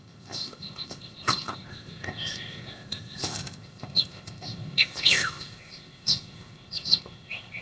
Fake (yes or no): yes